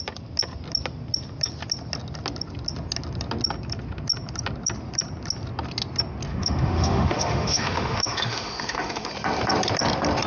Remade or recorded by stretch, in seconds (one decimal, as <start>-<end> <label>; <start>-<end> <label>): 0.0-6.3 recorded; 6.3-9.1 remade; 9.1-10.3 recorded